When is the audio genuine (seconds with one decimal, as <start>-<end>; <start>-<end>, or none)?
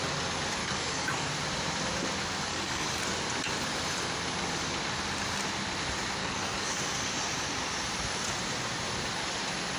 0.0-0.6; 1.3-2.5; 3.0-6.2; 6.8-9.8